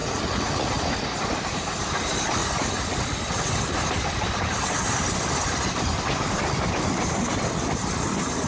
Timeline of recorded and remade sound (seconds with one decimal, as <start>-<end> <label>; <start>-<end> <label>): 0.0-0.7 remade; 0.7-8.5 recorded